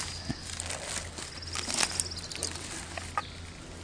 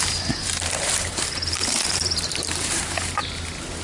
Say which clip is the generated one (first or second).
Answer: second